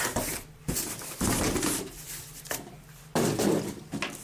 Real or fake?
real